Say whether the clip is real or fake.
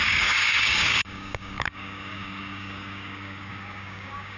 fake